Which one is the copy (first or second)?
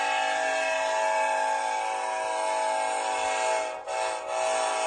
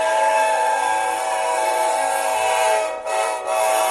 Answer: second